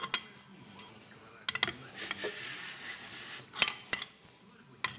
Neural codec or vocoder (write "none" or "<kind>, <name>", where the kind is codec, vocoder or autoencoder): none